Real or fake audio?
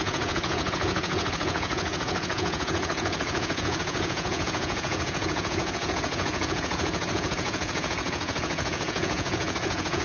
fake